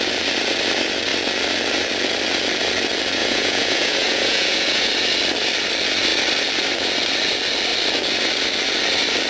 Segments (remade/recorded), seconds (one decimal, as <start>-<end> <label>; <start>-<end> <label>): 0.0-3.2 recorded; 3.2-4.9 remade; 4.9-9.3 recorded